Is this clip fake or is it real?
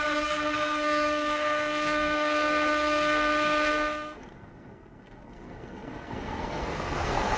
fake